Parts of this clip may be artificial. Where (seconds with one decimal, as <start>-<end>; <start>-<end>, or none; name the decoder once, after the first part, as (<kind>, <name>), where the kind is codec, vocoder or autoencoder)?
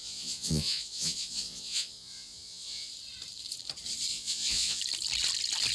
0.0-2.9 (vocoder, Vocos); 4.1-4.8